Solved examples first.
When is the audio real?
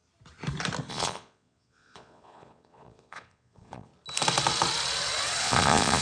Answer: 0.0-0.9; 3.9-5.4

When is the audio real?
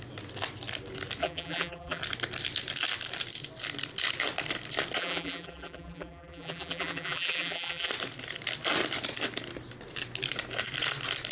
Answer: 0.0-1.2; 2.0-5.0; 7.9-11.3